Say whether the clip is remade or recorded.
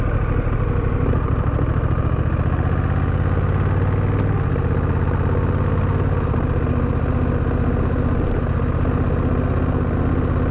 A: recorded